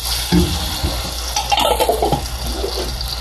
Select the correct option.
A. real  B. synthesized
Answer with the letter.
A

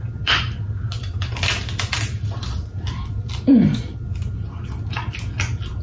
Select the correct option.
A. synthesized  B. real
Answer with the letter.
B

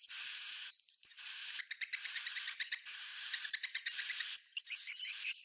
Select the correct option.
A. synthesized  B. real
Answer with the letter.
A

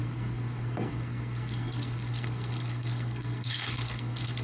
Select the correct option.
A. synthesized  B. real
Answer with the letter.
A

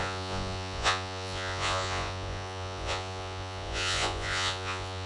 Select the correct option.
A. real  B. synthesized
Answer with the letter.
B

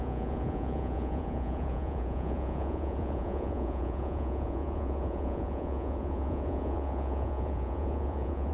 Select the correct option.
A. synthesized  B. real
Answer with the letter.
A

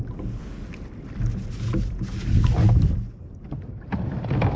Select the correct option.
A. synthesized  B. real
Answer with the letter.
B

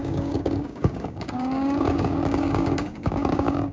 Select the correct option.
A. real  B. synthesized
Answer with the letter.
B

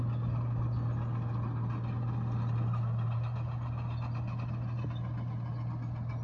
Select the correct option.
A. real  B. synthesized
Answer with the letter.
A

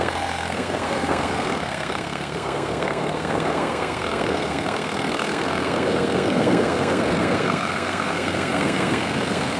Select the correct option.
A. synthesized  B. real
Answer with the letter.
A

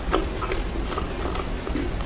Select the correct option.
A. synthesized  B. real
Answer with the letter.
B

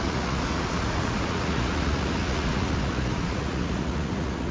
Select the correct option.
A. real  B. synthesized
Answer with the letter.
B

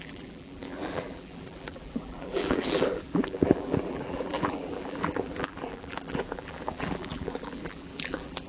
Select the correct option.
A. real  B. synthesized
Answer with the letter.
B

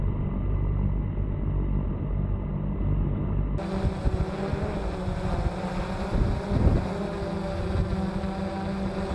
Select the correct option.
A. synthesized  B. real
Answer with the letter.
B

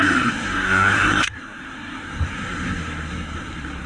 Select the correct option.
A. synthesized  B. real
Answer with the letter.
A